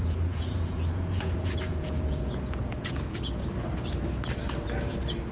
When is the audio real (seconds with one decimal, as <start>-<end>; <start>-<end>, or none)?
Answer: 3.2-5.3